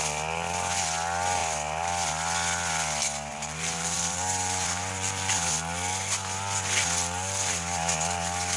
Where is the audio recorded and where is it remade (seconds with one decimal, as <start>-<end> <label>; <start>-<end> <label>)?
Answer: 0.0-3.3 recorded; 3.3-5.3 remade; 5.3-8.6 recorded